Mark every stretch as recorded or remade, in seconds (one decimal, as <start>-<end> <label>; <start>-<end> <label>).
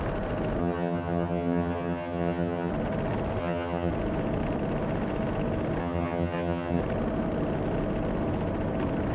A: 0.0-0.6 recorded; 0.6-2.7 remade; 2.7-3.4 recorded; 3.4-3.9 remade; 3.9-5.8 recorded; 5.8-6.8 remade; 6.8-9.1 recorded